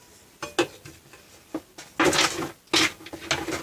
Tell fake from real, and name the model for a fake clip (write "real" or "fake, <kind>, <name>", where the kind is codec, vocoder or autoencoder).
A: real